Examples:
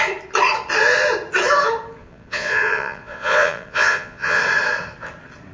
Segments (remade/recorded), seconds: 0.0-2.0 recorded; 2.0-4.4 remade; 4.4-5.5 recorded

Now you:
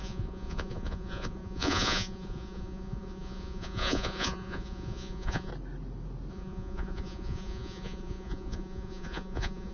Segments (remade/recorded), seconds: 0.0-5.5 remade; 5.5-6.3 recorded; 6.3-9.7 remade

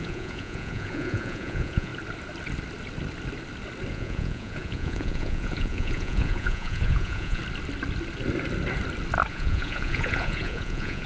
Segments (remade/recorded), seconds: 0.0-1.9 remade; 1.9-3.9 recorded; 3.9-7.4 remade; 7.4-9.3 recorded; 9.3-11.1 remade

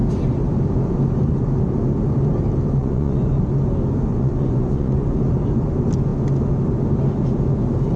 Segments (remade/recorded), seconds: 0.0-2.8 recorded; 2.8-3.4 remade; 3.4-4.1 recorded; 4.1-5.2 remade; 5.2-8.0 recorded